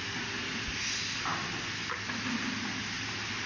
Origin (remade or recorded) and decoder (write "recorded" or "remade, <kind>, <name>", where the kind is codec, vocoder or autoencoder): recorded